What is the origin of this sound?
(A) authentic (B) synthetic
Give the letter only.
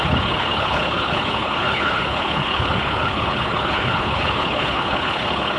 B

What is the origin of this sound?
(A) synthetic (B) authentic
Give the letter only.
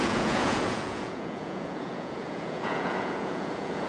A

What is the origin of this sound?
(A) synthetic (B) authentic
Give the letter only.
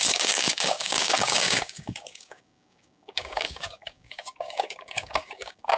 A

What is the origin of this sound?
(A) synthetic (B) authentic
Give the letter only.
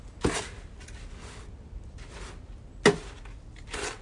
B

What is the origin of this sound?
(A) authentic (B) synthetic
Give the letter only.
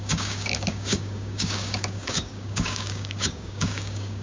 B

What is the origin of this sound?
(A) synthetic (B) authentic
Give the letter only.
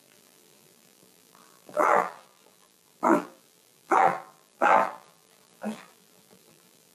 A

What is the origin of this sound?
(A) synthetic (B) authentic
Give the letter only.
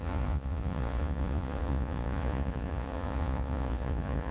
A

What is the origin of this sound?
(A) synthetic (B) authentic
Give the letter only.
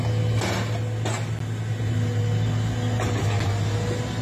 B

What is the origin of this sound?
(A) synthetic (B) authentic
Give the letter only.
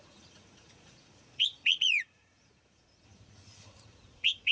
A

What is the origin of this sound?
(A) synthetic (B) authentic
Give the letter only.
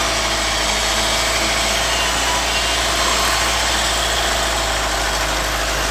B